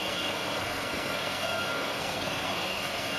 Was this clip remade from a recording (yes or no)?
yes